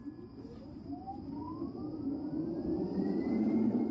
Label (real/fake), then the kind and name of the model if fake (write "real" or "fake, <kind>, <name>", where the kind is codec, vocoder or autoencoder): real